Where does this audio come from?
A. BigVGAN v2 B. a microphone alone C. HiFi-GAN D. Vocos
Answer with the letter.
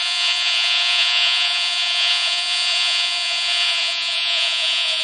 D